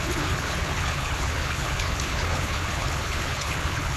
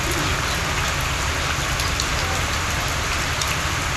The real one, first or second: second